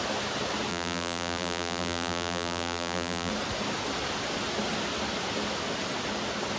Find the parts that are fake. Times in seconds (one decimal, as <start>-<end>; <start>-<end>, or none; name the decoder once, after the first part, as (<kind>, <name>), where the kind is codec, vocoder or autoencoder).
0.7-3.3 (vocoder, BigVGAN v2)